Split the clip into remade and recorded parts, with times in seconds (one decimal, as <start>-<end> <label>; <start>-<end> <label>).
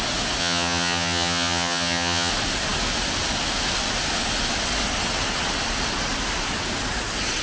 0.0-0.4 recorded; 0.4-2.3 remade; 2.3-7.4 recorded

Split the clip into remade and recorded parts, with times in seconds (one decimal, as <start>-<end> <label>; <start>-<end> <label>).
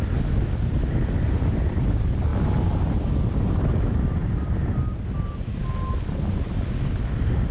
0.0-7.5 recorded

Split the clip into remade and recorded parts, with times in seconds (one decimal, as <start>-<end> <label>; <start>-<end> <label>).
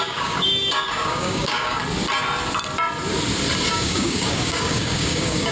0.0-1.8 remade; 1.8-3.7 recorded; 3.7-5.5 remade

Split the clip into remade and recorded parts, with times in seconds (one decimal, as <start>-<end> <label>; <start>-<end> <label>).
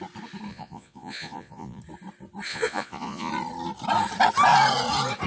0.0-0.5 recorded; 0.5-1.8 remade; 1.8-2.5 recorded; 2.5-3.3 remade; 3.3-5.3 recorded